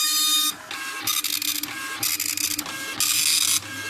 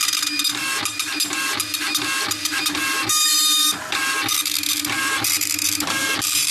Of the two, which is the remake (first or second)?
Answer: second